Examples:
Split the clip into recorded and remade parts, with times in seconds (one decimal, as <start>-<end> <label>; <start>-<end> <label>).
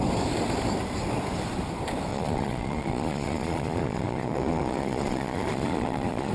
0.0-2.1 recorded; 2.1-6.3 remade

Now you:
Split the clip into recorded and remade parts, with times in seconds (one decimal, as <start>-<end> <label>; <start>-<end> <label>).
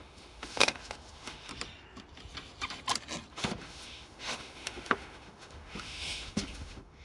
0.0-1.5 remade; 1.5-3.3 recorded; 3.3-7.0 remade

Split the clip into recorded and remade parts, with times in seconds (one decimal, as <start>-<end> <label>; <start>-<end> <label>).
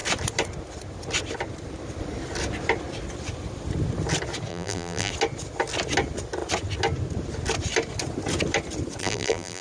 0.0-4.5 recorded; 4.5-5.1 remade; 5.1-9.0 recorded; 9.0-9.6 remade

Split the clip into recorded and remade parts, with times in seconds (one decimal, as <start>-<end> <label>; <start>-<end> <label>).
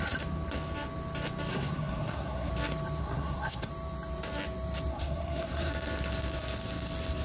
0.0-1.5 recorded; 1.5-2.5 remade; 2.5-3.0 recorded; 3.0-3.7 remade; 3.7-4.9 recorded; 4.9-5.7 remade; 5.7-7.2 recorded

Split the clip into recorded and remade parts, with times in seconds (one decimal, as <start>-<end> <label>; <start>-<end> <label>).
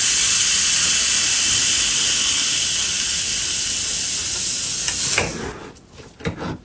0.0-6.6 recorded